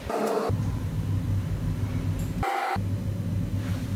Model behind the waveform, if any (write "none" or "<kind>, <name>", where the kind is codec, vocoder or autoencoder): none